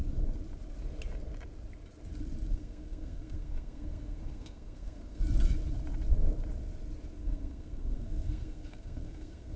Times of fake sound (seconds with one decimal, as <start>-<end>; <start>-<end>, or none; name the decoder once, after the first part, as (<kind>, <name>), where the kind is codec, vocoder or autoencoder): 2.5-5.2 (codec, SNAC); 7.2-9.6